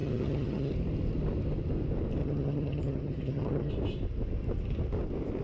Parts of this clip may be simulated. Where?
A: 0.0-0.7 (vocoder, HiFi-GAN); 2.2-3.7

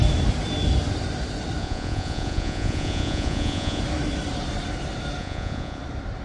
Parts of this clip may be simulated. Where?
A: 1.6-3.8 (vocoder, Vocos); 5.2-5.8

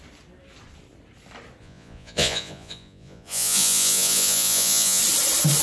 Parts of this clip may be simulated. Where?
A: 1.6-5.0 (vocoder, Vocos)

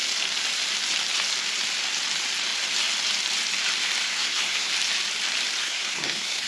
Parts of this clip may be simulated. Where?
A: 4.1-4.7 (codec, SNAC); 5.6-6.5

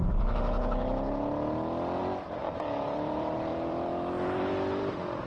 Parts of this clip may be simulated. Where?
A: 2.0-5.3 (vocoder, BigVGAN v2)

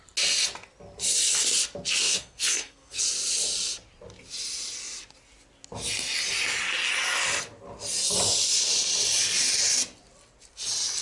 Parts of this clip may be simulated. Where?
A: 2.0-3.0 (codec, SNAC)

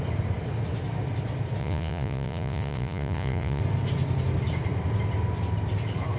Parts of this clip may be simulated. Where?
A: 1.6-3.6 (vocoder, Vocos)

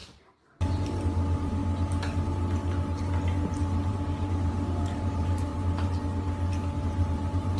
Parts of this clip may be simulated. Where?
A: 0.0-1.6 (vocoder, BigVGAN v2); 3.9-5.5; 6.8-7.6